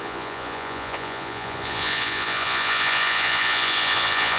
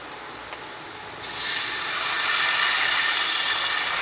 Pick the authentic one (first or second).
second